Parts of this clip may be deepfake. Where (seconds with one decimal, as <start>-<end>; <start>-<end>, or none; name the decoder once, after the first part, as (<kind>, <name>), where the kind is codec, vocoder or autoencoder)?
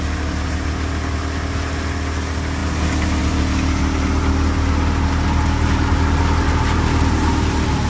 none